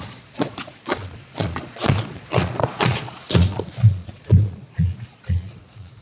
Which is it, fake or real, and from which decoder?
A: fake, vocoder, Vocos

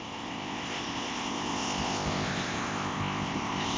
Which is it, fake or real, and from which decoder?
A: fake, codec, ZipCodec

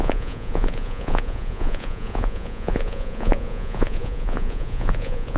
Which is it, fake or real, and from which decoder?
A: fake, vocoder, Vocos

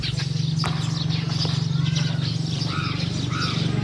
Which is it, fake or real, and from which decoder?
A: real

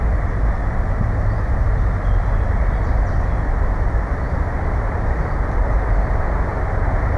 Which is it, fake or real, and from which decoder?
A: fake, vocoder, BigVGAN v2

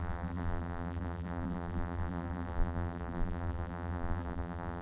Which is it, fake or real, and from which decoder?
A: fake, vocoder, BigVGAN v2